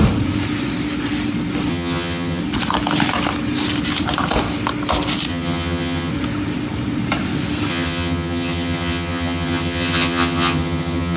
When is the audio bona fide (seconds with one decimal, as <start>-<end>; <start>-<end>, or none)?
0.0-1.7; 2.4-5.3; 6.1-7.7